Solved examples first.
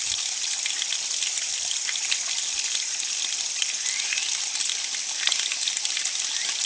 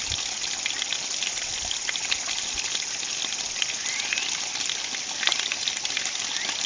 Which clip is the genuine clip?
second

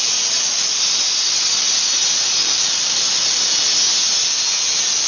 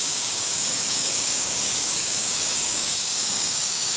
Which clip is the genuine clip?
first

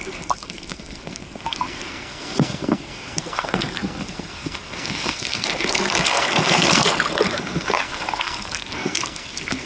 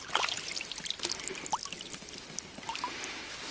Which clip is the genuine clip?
second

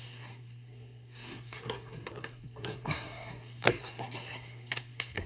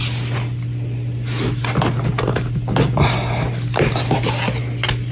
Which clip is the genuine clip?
second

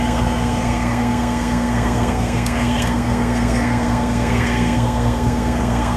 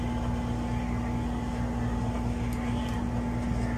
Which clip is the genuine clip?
second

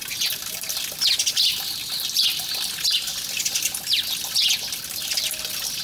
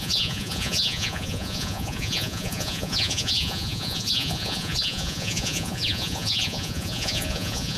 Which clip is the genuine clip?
first